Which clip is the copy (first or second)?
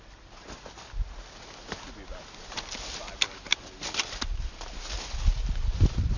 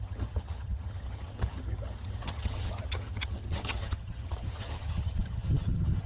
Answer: second